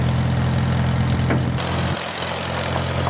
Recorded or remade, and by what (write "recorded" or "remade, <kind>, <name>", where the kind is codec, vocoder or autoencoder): recorded